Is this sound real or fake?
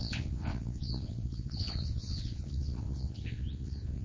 fake